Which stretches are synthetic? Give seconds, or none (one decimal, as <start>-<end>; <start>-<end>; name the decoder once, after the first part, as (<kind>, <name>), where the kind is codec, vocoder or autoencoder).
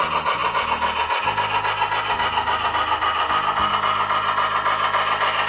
none